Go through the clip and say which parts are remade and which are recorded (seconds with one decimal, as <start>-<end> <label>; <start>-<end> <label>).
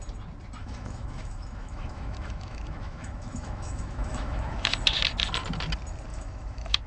0.0-0.6 recorded; 0.6-4.7 remade; 4.7-6.1 recorded; 6.1-6.9 remade